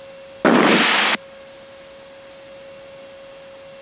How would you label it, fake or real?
real